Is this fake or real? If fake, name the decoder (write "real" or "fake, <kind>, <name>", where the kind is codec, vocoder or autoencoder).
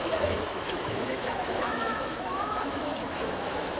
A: fake, autoencoder, DAC-VAE